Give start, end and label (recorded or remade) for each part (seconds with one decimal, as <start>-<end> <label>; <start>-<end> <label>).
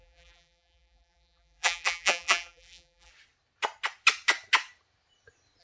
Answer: 0.0-3.1 remade; 3.1-5.6 recorded